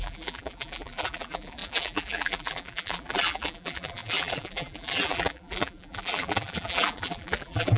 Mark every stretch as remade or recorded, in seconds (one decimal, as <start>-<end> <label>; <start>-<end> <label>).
0.0-7.8 remade